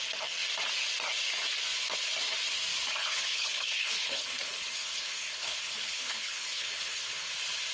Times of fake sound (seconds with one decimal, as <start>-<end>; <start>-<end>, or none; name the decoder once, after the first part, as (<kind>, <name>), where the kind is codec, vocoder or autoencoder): 3.0-7.3 (codec, HILCodec)